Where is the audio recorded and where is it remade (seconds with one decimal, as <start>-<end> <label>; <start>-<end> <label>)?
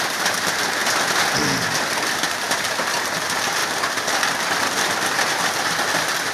0.0-0.8 remade; 0.8-2.3 recorded; 2.3-3.6 remade; 3.6-4.3 recorded; 4.3-6.3 remade